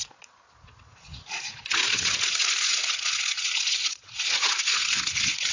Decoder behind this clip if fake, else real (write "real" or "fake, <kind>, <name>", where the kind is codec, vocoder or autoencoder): fake, vocoder, Vocos